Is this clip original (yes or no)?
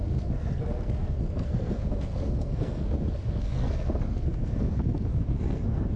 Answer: no